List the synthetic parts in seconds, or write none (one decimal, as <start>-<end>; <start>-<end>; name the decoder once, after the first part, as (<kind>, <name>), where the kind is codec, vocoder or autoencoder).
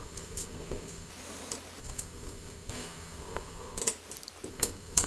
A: 0.0-1.1 (codec, SNAC); 1.8-3.8; 4.5-5.1